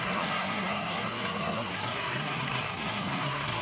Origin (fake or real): fake